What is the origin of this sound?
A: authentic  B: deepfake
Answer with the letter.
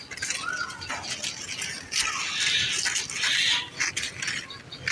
A